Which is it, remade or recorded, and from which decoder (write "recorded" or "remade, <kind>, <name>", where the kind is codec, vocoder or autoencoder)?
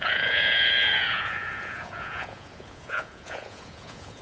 remade, vocoder, Vocos